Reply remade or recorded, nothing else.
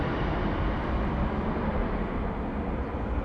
recorded